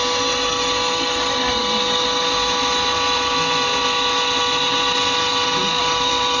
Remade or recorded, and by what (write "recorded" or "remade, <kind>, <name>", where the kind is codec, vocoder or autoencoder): recorded